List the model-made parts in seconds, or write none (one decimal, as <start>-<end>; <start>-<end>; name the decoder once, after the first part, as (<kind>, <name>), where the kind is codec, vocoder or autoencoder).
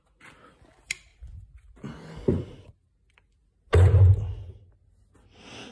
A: none